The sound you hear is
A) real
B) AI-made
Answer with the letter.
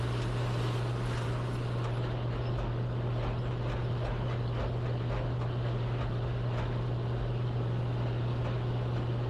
A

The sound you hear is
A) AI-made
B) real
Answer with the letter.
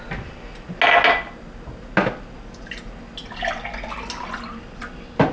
B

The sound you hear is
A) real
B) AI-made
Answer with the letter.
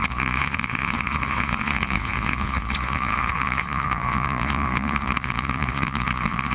B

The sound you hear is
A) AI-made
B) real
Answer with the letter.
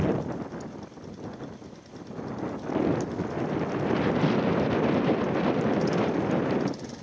B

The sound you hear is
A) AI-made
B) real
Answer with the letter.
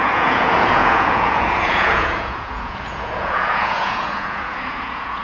A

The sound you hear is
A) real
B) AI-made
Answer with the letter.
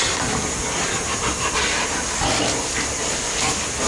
A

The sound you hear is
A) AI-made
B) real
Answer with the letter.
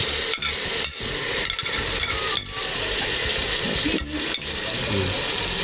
B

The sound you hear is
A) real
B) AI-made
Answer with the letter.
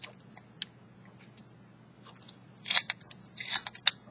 A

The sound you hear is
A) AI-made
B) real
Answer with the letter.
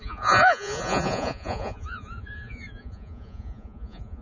A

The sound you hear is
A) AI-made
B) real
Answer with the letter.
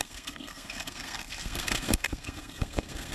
A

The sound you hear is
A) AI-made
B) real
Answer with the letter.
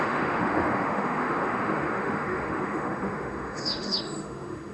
A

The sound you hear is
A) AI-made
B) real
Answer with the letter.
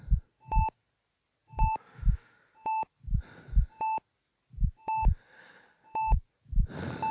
B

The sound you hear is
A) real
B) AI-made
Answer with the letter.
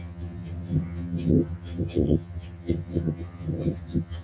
B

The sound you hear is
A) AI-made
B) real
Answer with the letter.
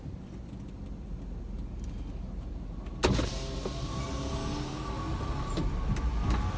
B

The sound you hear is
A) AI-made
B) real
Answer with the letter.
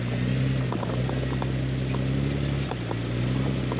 B